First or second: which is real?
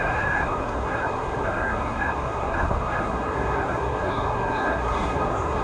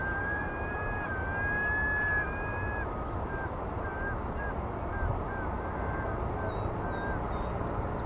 second